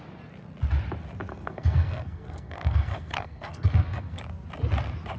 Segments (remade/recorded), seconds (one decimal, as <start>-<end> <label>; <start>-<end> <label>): 0.0-1.3 recorded; 1.3-4.2 remade; 4.2-5.2 recorded